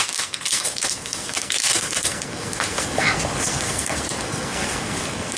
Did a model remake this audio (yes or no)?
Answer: yes